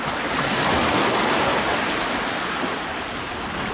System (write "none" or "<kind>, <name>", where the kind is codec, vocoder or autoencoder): none